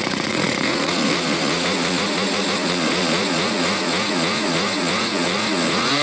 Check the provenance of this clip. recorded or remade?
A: remade